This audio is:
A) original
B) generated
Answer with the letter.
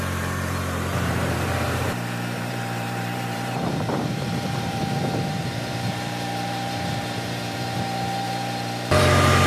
B